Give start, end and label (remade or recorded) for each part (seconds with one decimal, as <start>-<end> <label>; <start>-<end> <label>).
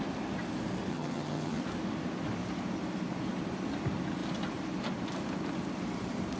0.0-0.9 recorded; 0.9-1.6 remade; 1.6-6.4 recorded